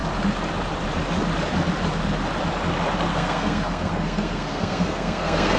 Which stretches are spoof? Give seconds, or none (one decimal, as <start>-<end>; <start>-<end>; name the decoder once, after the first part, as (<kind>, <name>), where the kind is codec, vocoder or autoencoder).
3.1-5.6 (codec, SNAC)